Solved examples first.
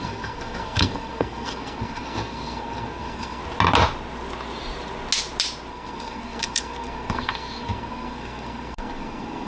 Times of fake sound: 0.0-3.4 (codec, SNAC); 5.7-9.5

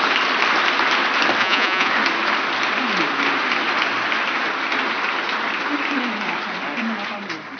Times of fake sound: 1.4-1.9 (vocoder, Vocos)

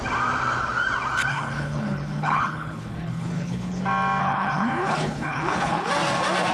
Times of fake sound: 1.3-3.8 (codec, HILCodec); 4.2-5.9

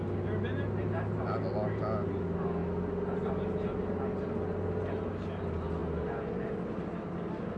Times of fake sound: none

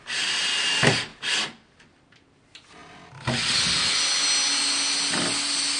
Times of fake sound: none

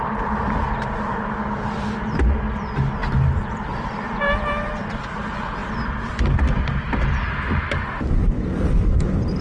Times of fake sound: 3.0-4.7 (vocoder, BigVGAN v2)

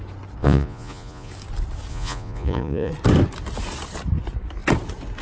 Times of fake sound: 0.4-1.3 (vocoder, Vocos); 1.9-2.9